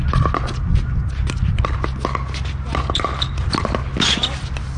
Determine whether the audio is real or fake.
real